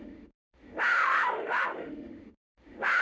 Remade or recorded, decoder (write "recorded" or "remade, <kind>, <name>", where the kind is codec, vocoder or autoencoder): remade, autoencoder, DAC-VAE